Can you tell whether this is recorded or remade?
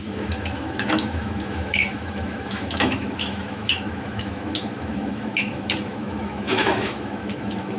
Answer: remade